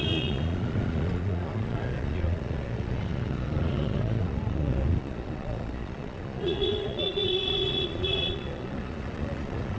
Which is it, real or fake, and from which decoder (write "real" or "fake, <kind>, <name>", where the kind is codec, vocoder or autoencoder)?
fake, vocoder, Vocos